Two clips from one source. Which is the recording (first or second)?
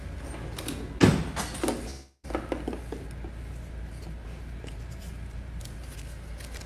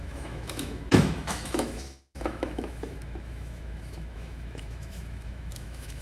first